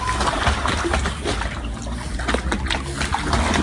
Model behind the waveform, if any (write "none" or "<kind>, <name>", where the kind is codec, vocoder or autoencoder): none